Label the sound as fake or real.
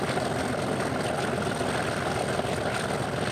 real